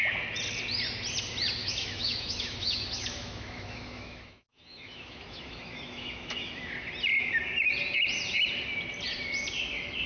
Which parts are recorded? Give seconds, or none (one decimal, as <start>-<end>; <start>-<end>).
0.0-1.6; 6.7-10.1